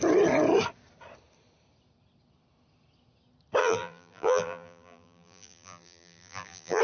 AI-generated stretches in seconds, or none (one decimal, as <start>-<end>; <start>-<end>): 3.6-6.8